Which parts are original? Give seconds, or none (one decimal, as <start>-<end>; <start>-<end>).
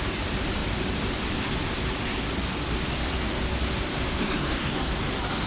0.0-4.2; 5.0-5.5